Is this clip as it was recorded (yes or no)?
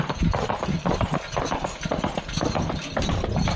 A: yes